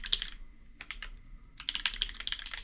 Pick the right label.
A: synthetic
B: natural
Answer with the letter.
B